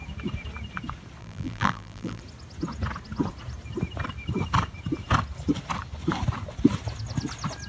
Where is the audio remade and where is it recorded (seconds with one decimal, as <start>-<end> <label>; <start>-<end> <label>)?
0.0-1.2 recorded; 1.2-2.2 remade; 2.2-7.7 recorded